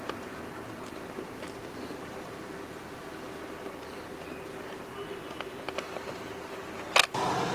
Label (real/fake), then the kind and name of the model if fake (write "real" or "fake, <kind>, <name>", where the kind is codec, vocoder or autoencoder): real